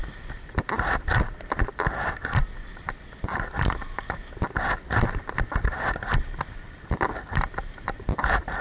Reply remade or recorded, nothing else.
recorded